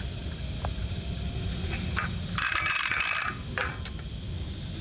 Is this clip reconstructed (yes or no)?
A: no